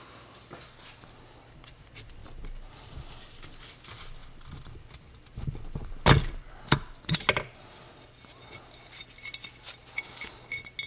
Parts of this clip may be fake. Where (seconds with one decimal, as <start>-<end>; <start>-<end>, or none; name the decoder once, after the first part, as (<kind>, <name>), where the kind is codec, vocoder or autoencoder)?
2.2-2.9 (vocoder, BigVGAN v2)